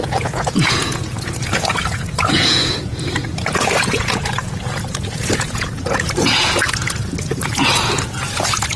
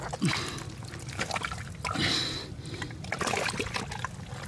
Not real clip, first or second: first